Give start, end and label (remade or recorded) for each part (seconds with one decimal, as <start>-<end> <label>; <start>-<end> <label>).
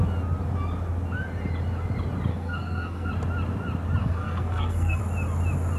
0.0-2.3 recorded; 2.3-3.1 remade; 3.1-4.0 recorded; 4.0-5.0 remade; 5.0-5.8 recorded